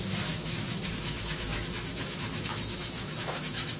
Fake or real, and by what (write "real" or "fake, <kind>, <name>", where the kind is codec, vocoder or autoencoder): fake, autoencoder, DAC-VAE